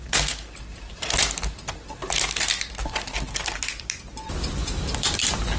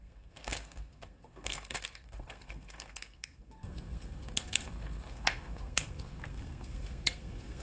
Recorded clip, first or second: first